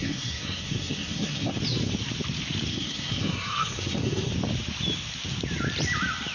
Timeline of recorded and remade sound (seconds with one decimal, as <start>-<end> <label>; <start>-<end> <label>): 0.0-1.6 remade; 1.6-2.7 recorded; 2.7-4.3 remade; 4.3-6.3 recorded